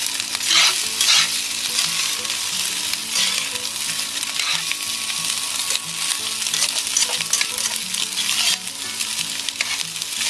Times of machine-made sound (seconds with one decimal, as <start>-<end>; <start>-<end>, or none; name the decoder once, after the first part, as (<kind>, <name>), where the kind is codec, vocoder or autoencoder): none